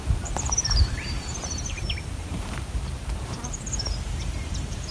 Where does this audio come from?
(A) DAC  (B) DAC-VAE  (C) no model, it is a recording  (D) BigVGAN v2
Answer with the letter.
D